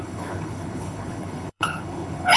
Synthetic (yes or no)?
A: yes